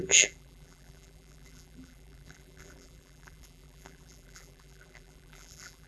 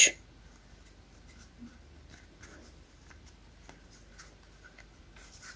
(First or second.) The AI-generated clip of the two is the first